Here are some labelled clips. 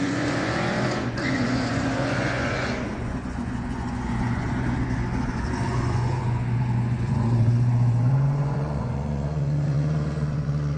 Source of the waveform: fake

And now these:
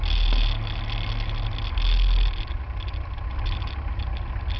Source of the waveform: real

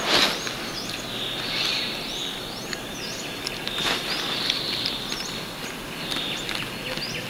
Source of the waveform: real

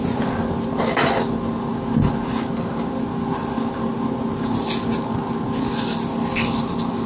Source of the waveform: real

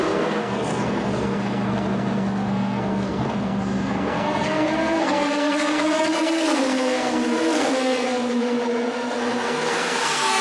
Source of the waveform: fake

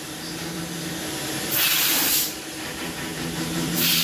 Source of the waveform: fake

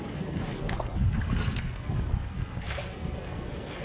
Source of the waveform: fake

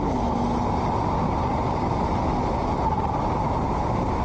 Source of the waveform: real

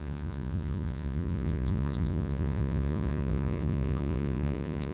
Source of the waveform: fake